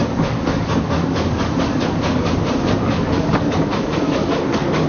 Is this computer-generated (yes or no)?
yes